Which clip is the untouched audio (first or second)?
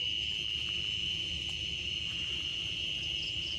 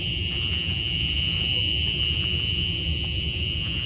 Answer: first